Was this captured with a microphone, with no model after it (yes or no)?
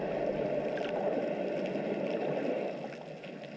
yes